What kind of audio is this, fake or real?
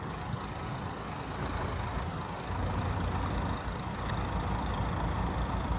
real